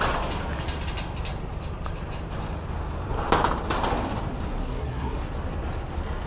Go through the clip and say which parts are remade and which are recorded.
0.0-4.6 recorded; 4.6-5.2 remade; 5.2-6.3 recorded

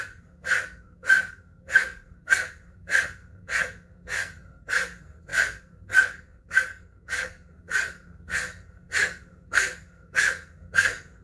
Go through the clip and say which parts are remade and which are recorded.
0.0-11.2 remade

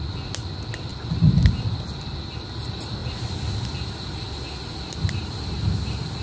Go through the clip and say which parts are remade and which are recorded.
0.0-6.2 recorded